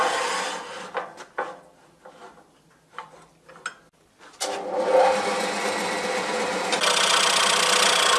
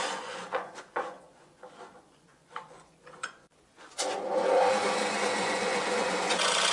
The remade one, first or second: second